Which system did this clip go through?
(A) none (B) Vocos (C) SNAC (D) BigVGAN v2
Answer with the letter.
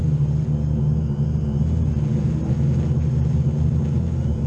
A